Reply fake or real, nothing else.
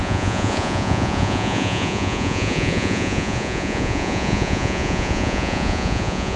fake